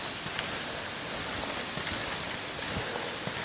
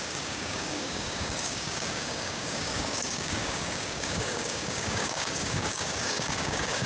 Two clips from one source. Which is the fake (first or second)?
second